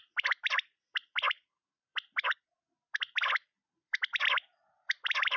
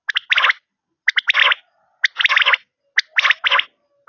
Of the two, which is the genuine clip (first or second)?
second